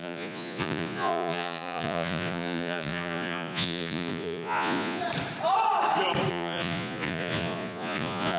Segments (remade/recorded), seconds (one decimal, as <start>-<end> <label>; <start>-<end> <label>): 0.0-5.0 remade; 5.0-6.3 recorded; 6.3-8.4 remade